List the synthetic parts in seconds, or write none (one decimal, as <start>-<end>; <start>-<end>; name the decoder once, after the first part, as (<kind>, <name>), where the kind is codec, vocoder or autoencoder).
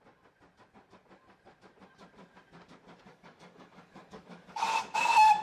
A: 3.1-4.6 (codec, DAC)